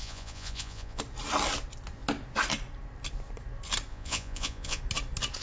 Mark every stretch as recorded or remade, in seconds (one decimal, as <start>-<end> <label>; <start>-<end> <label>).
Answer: 0.0-1.0 remade; 1.0-3.9 recorded; 3.9-4.8 remade; 4.8-5.4 recorded